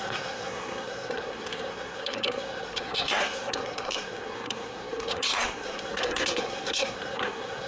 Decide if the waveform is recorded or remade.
remade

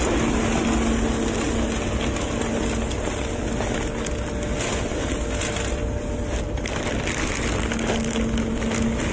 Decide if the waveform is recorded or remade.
recorded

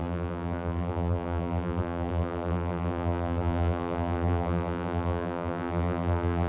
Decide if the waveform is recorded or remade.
remade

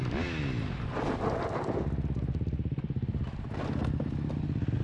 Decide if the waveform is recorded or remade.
recorded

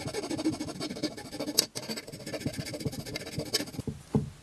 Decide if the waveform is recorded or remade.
recorded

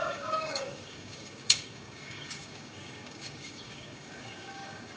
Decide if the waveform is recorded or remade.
remade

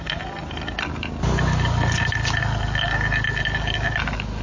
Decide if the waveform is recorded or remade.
recorded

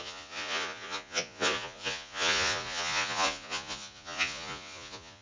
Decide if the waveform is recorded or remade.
remade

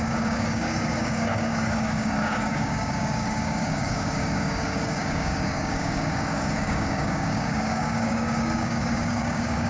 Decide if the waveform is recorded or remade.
remade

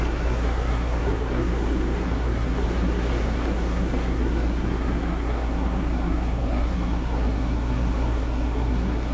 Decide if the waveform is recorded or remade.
remade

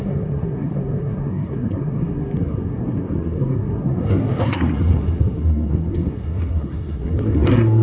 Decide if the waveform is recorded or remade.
remade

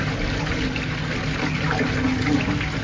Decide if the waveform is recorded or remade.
recorded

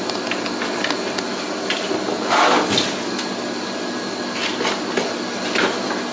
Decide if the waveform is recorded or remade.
recorded